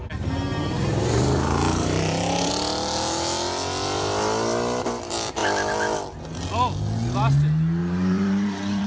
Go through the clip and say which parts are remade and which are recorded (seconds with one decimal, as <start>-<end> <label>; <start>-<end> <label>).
0.0-0.5 recorded; 0.5-2.5 remade; 2.5-7.8 recorded; 7.8-8.9 remade